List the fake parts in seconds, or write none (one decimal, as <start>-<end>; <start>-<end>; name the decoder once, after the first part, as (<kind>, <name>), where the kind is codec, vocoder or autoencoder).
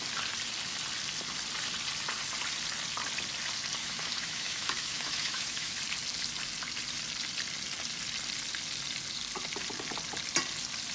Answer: 3.8-5.8 (autoencoder, DAC-VAE)